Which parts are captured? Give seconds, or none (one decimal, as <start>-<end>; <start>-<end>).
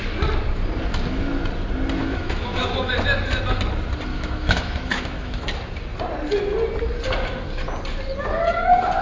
0.0-2.0; 2.9-4.1; 5.4-9.0